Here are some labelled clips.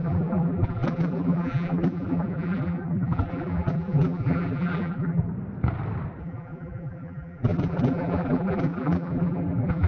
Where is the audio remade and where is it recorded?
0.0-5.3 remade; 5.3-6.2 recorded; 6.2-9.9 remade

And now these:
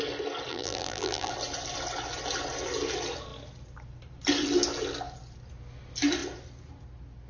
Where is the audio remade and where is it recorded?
0.0-0.5 recorded; 0.5-1.3 remade; 1.3-7.3 recorded

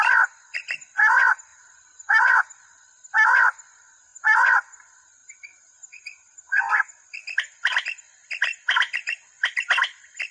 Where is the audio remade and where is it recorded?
0.0-1.5 recorded; 1.5-2.2 remade; 2.2-4.1 recorded; 4.1-4.8 remade; 4.8-5.2 recorded; 5.2-6.7 remade; 6.7-10.3 recorded

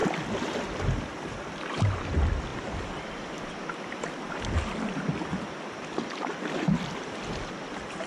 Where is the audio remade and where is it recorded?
0.0-0.5 remade; 0.5-8.1 recorded